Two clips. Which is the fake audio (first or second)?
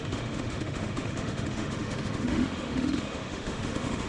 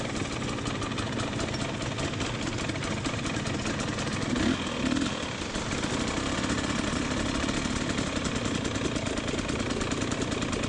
first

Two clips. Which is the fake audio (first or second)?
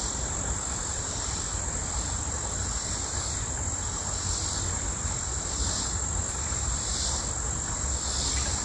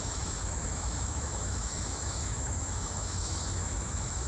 second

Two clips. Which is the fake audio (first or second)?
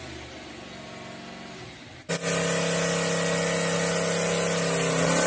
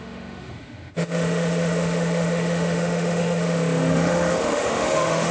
second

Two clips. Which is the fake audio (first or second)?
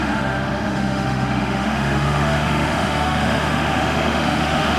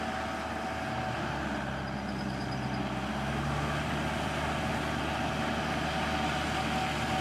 first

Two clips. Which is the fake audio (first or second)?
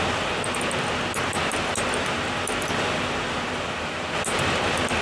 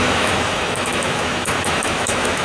second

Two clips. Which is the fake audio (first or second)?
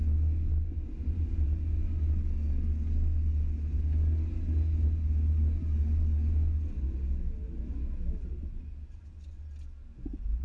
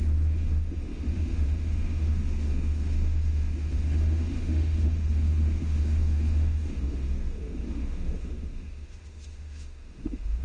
second